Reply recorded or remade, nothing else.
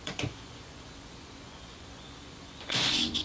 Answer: remade